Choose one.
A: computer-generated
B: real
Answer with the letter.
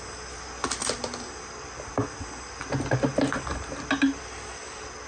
B